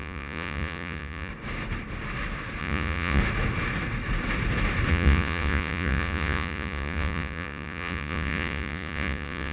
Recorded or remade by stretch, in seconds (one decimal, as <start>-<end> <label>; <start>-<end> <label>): 0.0-1.3 remade; 1.3-2.6 recorded; 2.6-3.2 remade; 3.2-4.9 recorded; 4.9-9.5 remade